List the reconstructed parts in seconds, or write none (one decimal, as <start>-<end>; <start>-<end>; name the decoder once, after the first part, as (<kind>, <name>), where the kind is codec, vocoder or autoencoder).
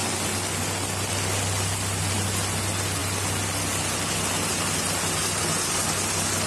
none